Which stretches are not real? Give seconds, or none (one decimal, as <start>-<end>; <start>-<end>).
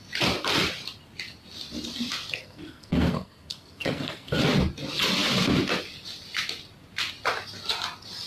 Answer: 2.4-4.4